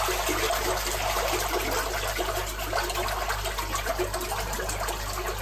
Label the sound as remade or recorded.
recorded